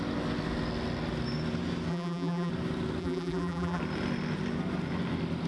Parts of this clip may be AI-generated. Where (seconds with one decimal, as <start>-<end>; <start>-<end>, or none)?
1.9-2.5; 3.0-3.8